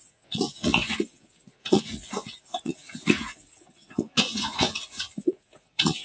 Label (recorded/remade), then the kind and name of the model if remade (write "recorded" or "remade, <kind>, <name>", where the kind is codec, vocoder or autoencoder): remade, vocoder, Vocos